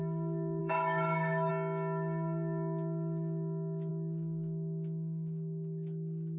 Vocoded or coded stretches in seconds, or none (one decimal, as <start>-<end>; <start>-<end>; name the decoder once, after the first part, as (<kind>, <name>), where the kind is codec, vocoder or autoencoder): 0.6-1.5 (autoencoder, DAC-VAE)